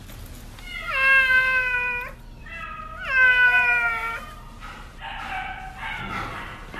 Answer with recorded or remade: recorded